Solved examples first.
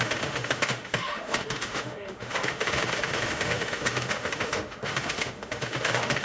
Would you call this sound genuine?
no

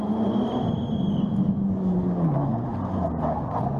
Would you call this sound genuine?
yes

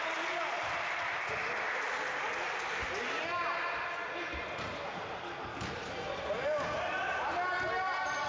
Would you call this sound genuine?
yes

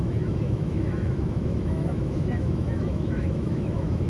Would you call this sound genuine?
no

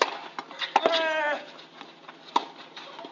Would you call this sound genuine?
yes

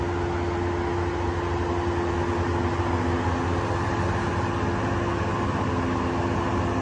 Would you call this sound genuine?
yes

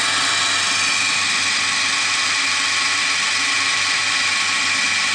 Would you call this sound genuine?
yes